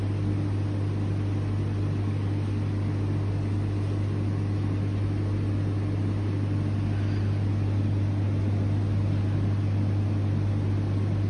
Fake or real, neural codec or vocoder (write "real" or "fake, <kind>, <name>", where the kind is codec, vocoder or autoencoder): real